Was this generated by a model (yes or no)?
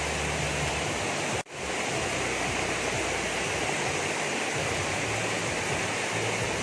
no